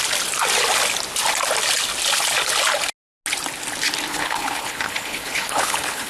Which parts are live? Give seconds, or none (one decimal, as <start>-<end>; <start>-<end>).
0.0-4.1